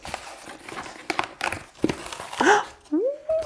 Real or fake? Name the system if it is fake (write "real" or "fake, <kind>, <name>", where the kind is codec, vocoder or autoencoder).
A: real